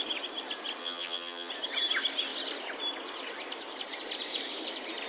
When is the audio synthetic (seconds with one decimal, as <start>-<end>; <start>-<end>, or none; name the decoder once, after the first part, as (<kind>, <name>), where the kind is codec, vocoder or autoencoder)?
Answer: 0.8-1.5 (vocoder, HiFi-GAN)